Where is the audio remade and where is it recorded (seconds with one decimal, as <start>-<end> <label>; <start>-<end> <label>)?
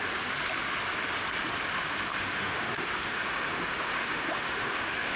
0.0-2.1 recorded; 2.1-5.2 remade